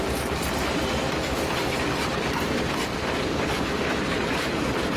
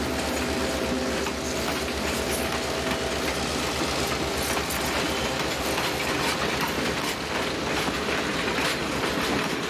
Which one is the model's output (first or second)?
first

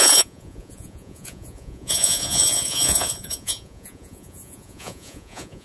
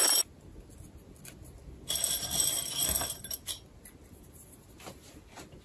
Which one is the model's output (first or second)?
first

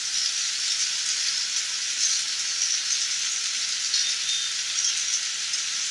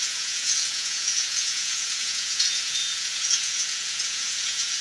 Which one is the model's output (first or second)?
second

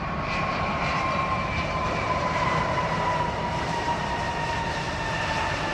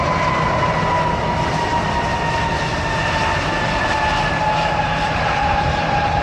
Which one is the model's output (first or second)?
first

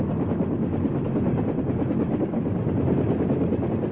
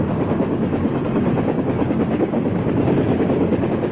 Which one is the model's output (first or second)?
second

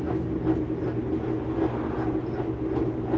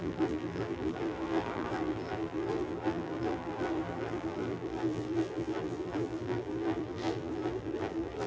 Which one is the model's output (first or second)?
second